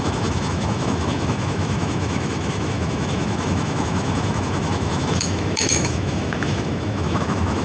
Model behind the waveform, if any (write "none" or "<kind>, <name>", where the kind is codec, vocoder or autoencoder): autoencoder, DAC-VAE